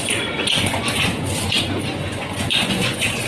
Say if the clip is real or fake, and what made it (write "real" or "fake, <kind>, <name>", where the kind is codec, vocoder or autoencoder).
fake, vocoder, Vocos